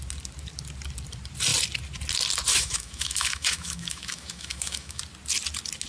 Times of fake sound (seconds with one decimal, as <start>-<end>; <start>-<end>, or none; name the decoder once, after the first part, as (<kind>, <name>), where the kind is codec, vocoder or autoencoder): 2.5-5.0 (autoencoder, DAC-VAE)